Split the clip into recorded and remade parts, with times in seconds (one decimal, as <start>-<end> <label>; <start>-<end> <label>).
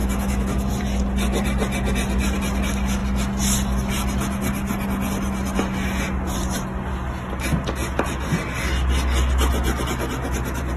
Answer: 0.0-0.7 remade; 0.7-10.8 recorded